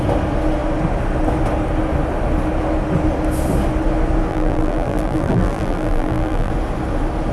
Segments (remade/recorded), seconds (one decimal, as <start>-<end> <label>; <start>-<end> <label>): 0.0-4.3 recorded; 4.3-6.5 remade; 6.5-7.3 recorded